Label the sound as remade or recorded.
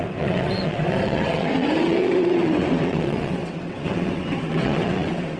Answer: remade